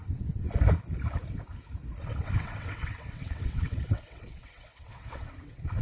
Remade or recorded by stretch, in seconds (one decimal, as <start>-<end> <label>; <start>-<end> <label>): 0.0-0.5 remade; 0.5-2.0 recorded; 2.0-5.8 remade